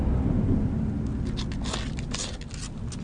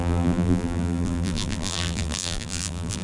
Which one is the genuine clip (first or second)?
first